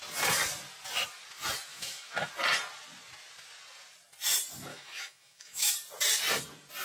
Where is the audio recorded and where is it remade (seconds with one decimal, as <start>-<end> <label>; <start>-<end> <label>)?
0.0-1.7 recorded; 1.7-2.3 remade; 2.3-4.7 recorded; 4.7-5.7 remade; 5.7-6.8 recorded